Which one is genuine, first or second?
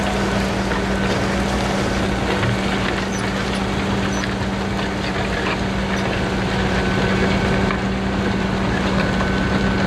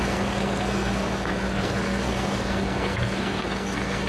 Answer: first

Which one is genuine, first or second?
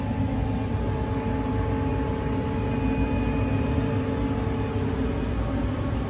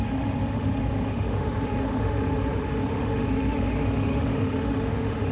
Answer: first